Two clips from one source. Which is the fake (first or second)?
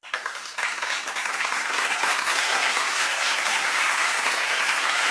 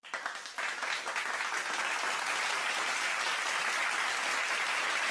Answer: first